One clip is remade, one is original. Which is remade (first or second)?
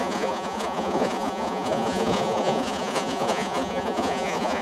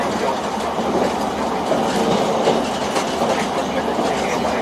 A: first